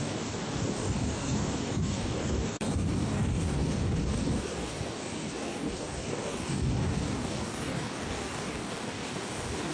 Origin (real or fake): fake